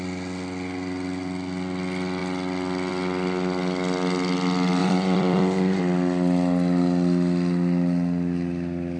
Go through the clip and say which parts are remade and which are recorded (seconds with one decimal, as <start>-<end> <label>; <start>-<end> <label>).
0.0-4.8 recorded; 4.8-5.8 remade; 5.8-9.0 recorded